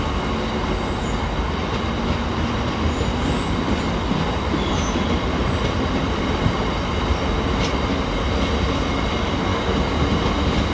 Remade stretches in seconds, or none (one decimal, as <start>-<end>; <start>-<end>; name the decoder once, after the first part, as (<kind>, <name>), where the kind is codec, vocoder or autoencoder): none

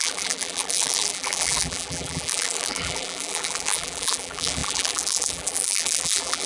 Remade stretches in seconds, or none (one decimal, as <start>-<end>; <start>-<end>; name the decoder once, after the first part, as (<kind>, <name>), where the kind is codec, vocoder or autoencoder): 0.0-6.5 (vocoder, BigVGAN v2)

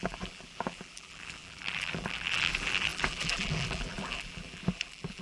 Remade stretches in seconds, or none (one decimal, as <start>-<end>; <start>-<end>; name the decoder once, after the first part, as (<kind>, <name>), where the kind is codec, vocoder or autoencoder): 0.0-5.2 (vocoder, BigVGAN v2)